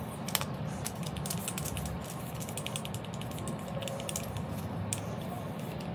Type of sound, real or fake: real